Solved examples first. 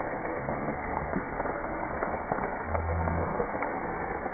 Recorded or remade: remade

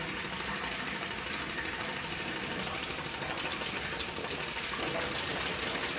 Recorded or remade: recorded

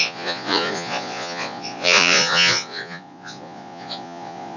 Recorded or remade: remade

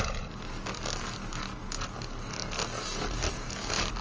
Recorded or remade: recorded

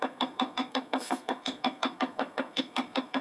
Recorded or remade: remade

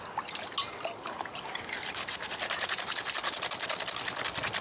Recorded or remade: recorded